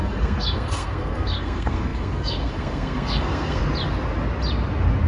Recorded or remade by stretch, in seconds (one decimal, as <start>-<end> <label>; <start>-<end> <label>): 0.0-3.6 remade; 3.6-5.1 recorded